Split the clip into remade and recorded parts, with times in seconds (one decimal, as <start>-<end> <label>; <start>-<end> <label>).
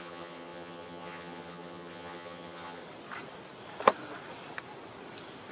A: 0.0-2.8 remade; 2.8-5.5 recorded